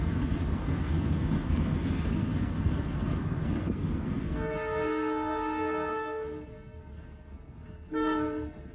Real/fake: fake